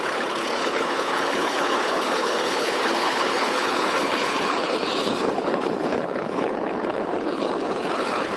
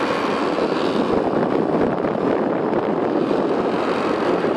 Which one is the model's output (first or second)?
first